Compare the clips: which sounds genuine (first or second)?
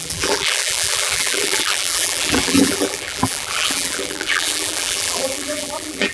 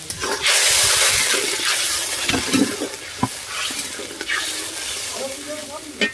second